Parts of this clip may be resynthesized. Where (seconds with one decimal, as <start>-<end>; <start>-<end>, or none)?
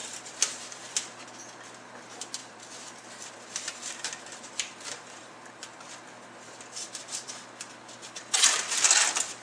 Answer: 0.0-0.8; 2.4-7.3